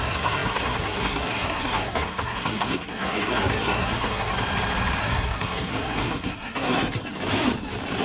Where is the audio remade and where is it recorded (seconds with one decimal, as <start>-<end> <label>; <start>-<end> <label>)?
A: 0.0-4.3 remade; 4.3-5.0 recorded; 5.0-7.0 remade; 7.0-8.0 recorded